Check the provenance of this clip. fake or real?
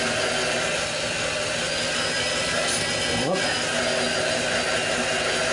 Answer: real